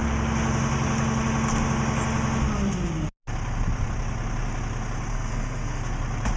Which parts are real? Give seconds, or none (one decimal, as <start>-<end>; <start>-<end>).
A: 0.0-5.1; 5.8-6.4